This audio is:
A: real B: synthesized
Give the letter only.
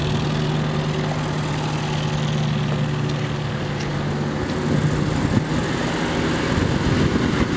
A